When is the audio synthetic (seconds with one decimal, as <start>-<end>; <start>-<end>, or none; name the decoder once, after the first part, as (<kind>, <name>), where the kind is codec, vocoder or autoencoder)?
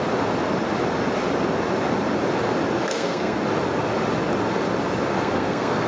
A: 2.8-3.4 (codec, SNAC); 5.1-5.9